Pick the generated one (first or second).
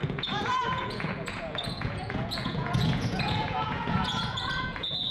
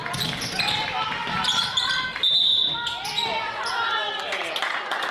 first